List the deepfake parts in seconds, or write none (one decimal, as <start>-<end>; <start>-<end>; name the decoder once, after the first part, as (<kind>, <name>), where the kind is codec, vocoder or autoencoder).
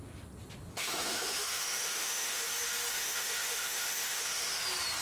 0.7-2.5 (autoencoder, DAC-VAE); 2.9-4.6